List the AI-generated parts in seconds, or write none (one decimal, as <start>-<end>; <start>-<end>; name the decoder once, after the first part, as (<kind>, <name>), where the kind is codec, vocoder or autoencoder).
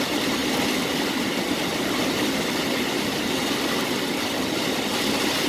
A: none